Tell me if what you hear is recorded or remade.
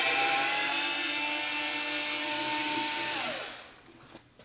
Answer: recorded